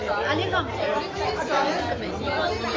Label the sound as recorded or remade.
recorded